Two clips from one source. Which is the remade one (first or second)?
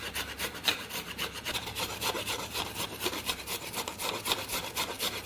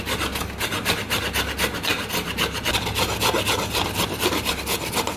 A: first